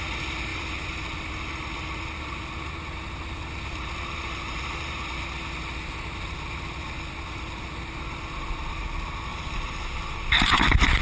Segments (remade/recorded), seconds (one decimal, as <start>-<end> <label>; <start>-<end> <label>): 0.0-9.3 recorded; 9.3-11.0 remade